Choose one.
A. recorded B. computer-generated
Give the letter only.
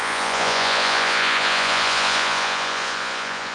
B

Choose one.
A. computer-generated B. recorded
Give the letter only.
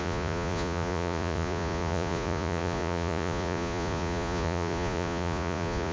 A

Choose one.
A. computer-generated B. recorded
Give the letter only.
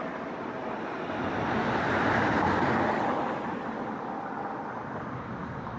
B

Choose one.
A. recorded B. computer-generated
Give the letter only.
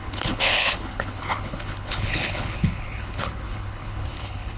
B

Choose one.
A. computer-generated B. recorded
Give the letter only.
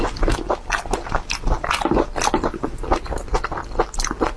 B